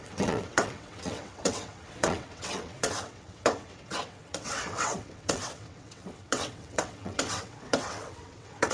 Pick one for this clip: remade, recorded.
remade